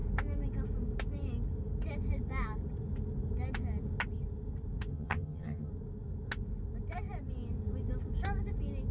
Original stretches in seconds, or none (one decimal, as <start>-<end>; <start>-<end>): 0.0-4.9; 5.7-8.9

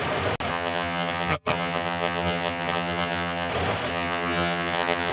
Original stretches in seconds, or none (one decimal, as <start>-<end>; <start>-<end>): 0.0-0.5; 3.5-3.9

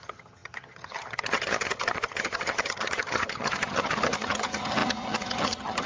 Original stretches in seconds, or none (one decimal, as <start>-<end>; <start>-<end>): none

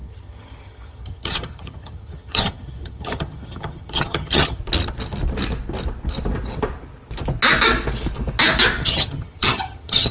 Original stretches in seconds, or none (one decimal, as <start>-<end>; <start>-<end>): 4.6-8.8

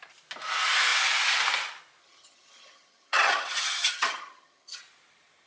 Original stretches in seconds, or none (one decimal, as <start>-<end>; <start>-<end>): 0.0-2.0; 4.8-5.5